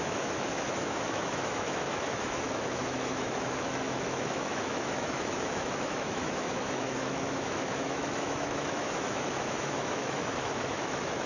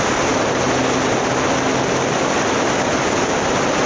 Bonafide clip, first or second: second